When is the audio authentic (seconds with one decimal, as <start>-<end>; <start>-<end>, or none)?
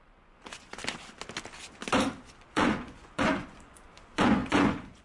0.8-2.5